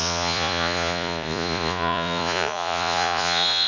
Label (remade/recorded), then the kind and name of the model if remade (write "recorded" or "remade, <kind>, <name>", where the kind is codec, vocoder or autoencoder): remade, vocoder, Vocos